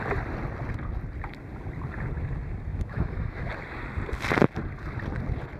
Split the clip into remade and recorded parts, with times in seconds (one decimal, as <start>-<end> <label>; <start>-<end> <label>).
0.0-2.7 recorded; 2.7-3.5 remade; 3.5-5.6 recorded